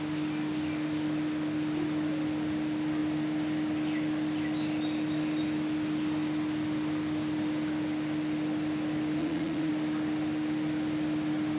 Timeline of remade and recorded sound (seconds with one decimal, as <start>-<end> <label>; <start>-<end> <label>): 0.0-9.2 recorded; 9.2-9.7 remade; 9.7-11.6 recorded